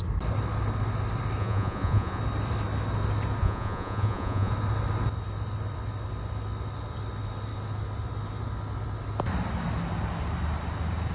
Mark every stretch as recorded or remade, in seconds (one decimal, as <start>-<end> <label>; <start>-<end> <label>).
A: 0.0-1.4 recorded; 1.4-2.2 remade; 2.2-3.4 recorded; 3.4-4.5 remade; 4.5-11.1 recorded